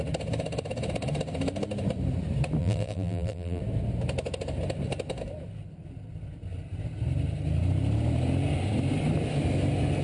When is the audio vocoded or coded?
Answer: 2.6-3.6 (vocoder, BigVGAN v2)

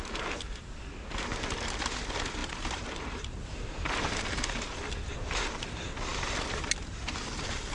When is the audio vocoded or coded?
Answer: 2.4-4.1 (vocoder, BigVGAN v2); 6.1-7.0

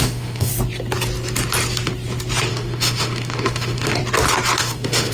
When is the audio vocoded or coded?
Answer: 0.0-0.5 (autoencoder, DAC-VAE); 2.5-4.0; 4.6-5.1

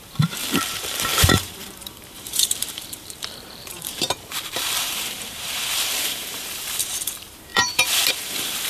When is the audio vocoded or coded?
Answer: 0.0-8.7 (vocoder, BigVGAN v2)

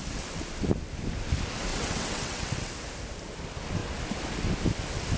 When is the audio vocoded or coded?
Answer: 1.7-2.7 (vocoder, WaveNeXt)

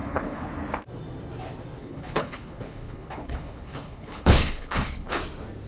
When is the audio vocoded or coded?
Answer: 0.0-0.5 (codec, HILCodec); 1.8-5.2